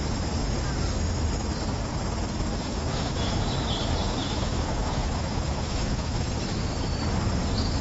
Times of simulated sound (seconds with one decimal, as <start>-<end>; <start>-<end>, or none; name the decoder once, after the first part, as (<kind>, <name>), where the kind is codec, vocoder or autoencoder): 2.5-3.4 (autoencoder, DAC-VAE); 4.2-6.3